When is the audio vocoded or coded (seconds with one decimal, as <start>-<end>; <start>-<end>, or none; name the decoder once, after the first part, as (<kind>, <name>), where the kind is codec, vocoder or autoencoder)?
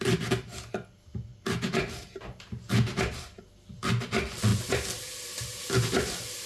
1.3-3.4 (vocoder, BigVGAN v2)